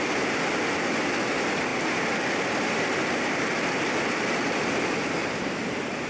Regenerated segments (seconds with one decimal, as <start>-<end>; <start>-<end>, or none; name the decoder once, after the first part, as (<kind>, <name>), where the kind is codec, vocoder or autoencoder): 5.2-6.1 (vocoder, BigVGAN v2)